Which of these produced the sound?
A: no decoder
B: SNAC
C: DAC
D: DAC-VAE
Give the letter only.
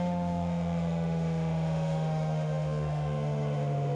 D